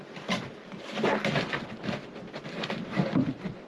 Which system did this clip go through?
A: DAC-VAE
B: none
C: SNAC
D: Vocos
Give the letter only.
B